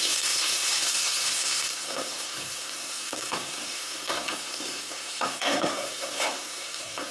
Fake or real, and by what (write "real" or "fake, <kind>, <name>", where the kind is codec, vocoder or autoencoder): fake, codec, SNAC